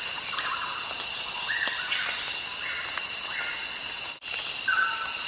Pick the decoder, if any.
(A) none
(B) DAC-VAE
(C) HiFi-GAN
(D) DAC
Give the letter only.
A